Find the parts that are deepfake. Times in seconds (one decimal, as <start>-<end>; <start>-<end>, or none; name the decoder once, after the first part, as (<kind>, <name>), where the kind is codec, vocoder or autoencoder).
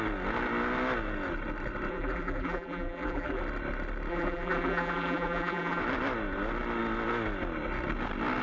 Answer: 1.9-3.4 (vocoder, BigVGAN v2); 4.1-5.8